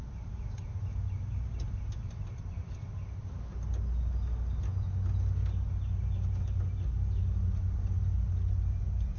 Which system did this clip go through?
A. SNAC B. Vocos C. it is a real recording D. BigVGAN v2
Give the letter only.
C